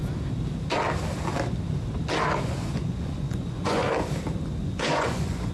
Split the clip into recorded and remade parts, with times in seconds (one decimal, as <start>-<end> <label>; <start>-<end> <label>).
0.0-2.4 recorded; 2.4-3.8 remade; 3.8-4.6 recorded; 4.6-5.5 remade